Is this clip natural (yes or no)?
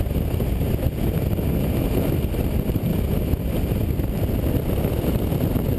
yes